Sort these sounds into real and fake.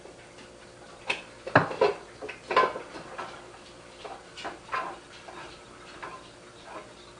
real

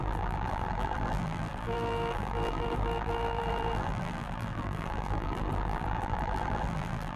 fake